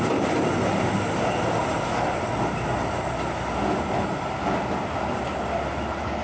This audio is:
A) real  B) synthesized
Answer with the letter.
A